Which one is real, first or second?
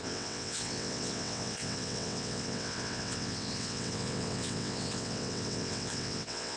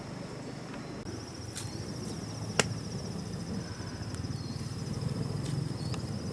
second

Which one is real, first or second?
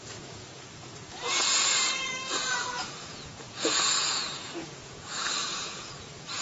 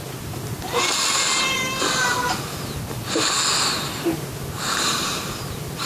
second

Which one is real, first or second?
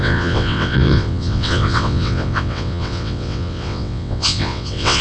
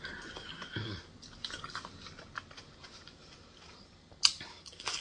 second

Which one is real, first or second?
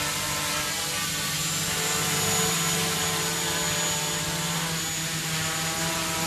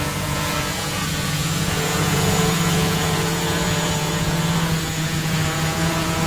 first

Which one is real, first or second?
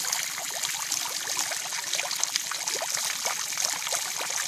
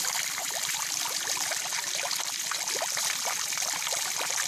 first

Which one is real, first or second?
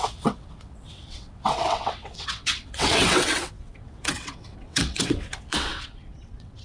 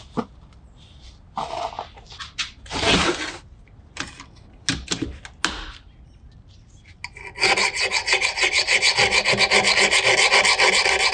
second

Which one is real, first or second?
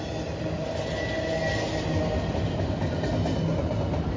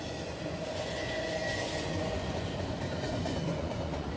first